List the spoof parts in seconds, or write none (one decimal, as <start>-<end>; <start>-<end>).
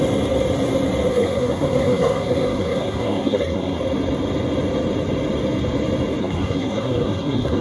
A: 1.1-3.8; 6.2-7.6